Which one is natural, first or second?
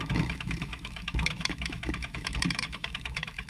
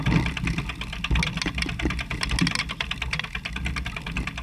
second